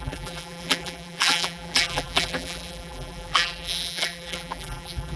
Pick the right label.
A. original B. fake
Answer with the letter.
B